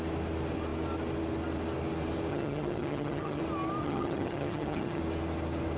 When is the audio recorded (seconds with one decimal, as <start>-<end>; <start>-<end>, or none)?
0.0-2.3; 3.4-3.8; 5.0-5.8